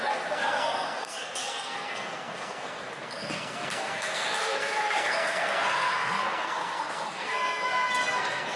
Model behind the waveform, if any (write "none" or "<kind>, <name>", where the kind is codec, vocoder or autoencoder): codec, SNAC